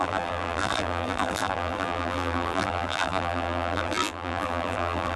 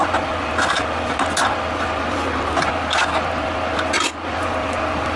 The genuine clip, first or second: second